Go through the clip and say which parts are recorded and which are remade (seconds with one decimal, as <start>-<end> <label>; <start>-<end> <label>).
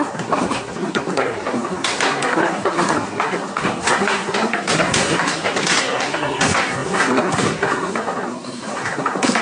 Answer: 0.0-9.4 remade